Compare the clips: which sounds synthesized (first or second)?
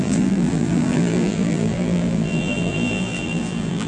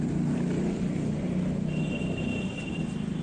first